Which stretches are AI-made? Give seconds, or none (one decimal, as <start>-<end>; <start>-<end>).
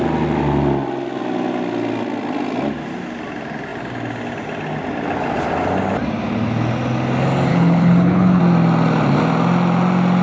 7.5-8.4